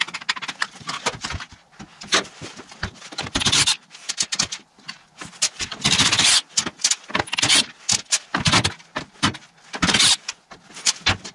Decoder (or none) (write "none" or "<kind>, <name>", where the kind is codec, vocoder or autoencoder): none